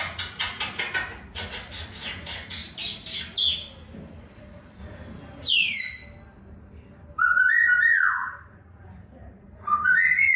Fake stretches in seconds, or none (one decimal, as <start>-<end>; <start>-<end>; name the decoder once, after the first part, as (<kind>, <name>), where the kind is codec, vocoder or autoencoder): 0.0-2.6 (vocoder, Vocos); 4.2-4.8; 5.5-6.0; 7.9-10.4